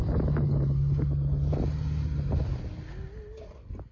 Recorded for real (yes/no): yes